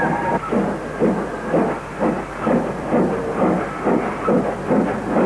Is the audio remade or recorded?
recorded